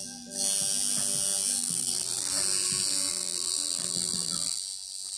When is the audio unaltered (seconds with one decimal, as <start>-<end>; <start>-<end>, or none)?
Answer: 0.0-1.6; 2.3-3.1; 4.6-5.2